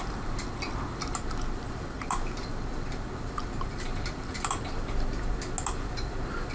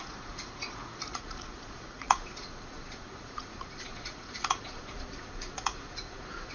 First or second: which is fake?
second